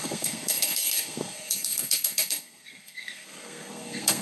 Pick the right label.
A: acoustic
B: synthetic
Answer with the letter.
B